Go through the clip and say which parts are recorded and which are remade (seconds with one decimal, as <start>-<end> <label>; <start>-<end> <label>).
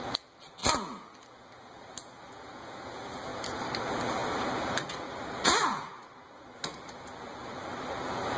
0.0-3.3 remade; 3.3-3.8 recorded; 3.8-8.4 remade